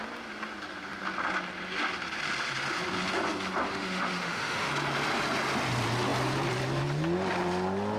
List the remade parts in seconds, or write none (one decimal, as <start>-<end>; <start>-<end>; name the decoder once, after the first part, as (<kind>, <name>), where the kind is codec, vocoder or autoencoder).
3.7-4.7 (autoencoder, DAC-VAE)